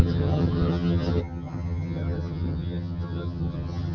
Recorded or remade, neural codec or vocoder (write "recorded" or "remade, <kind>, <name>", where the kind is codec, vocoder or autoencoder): remade, vocoder, HiFi-GAN